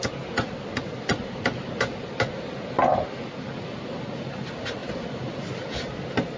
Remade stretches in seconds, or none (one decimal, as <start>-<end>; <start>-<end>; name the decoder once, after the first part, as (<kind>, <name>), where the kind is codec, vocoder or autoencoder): none